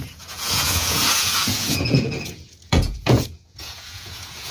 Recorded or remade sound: remade